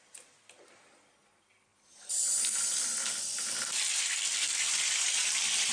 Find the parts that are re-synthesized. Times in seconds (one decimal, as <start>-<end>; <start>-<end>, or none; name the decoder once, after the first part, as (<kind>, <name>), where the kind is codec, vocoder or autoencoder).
1.7-5.1 (vocoder, BigVGAN v2)